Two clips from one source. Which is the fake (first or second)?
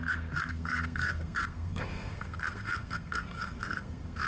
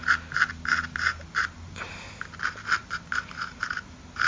first